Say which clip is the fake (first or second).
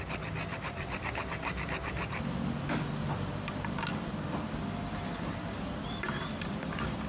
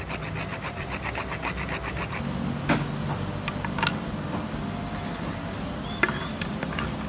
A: first